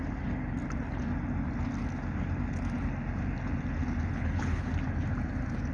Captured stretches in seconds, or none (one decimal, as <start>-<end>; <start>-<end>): 0.0-4.1; 4.7-5.7

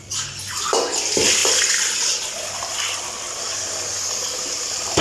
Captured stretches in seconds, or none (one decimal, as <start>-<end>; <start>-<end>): 0.0-5.0

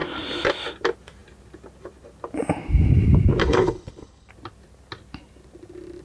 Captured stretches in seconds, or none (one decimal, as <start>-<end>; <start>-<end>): 0.0-3.4; 4.3-6.0

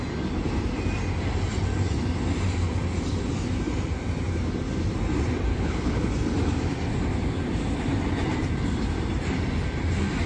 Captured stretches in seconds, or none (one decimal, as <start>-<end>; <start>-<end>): 0.0-5.5; 6.1-10.3

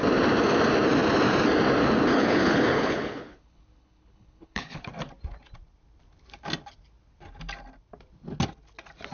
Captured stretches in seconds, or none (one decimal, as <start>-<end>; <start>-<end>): 0.0-2.1; 4.9-9.1

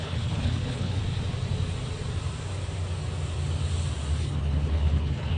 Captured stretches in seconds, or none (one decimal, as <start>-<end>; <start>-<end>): 1.0-4.2

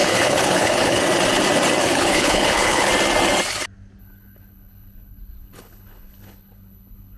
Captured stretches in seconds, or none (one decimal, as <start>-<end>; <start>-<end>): 1.0-1.8; 2.9-4.0